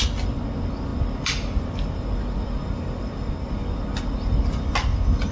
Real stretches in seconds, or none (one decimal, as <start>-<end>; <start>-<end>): 0.0-5.3